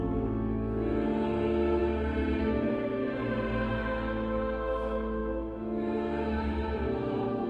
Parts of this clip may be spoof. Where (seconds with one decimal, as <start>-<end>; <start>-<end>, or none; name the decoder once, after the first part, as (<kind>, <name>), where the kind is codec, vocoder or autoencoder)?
0.0-1.8 (autoencoder, DAC-VAE); 2.4-3.2; 3.7-7.5